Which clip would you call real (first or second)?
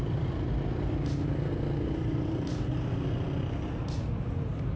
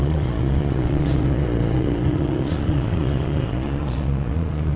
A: first